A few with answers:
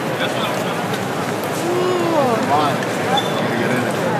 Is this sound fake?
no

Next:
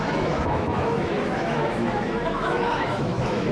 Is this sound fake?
yes